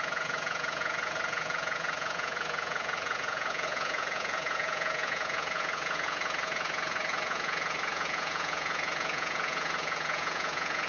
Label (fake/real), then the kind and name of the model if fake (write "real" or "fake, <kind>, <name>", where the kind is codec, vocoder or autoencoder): fake, vocoder, Vocos